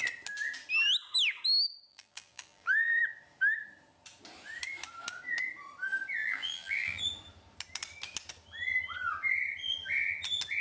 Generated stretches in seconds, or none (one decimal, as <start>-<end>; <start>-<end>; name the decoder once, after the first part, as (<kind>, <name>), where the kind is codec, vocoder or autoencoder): 1.9-3.0 (vocoder, BigVGAN v2); 6.2-7.0